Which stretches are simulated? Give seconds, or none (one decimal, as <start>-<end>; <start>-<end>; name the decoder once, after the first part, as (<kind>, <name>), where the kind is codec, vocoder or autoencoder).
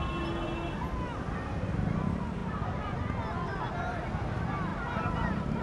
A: 4.7-5.6 (vocoder, BigVGAN v2)